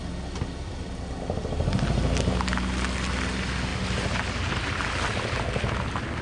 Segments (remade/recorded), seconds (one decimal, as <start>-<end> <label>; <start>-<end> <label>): 0.0-6.2 recorded